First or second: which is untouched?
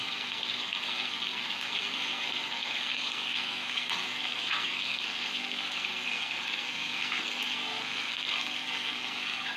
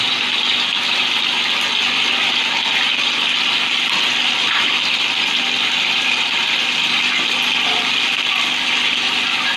second